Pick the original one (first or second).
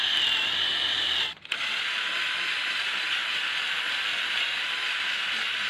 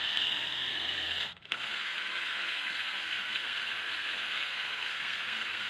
first